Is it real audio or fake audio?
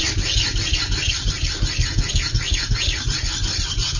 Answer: real